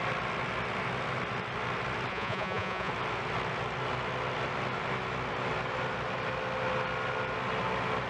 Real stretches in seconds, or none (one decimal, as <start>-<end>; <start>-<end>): 0.0-2.1; 2.9-8.1